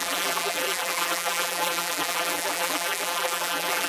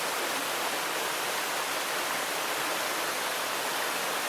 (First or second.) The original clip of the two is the second